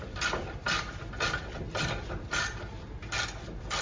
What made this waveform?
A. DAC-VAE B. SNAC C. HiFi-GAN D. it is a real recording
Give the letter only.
D